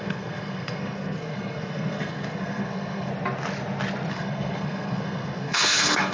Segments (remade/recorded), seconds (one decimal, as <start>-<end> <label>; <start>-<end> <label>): 0.0-3.1 remade; 3.1-4.1 recorded; 4.1-6.1 remade

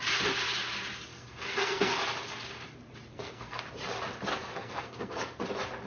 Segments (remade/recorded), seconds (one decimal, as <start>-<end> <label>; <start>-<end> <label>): 0.0-1.1 recorded; 1.1-2.0 remade; 2.0-3.1 recorded; 3.1-3.6 remade; 3.6-4.3 recorded; 4.3-5.4 remade; 5.4-5.9 recorded

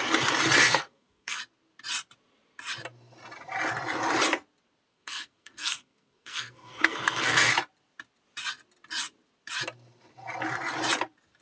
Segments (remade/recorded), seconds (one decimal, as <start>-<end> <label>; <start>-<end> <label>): 0.0-0.6 recorded; 0.6-1.4 remade; 1.4-4.9 recorded; 4.9-7.5 remade; 7.5-11.4 recorded